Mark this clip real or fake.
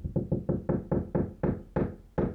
real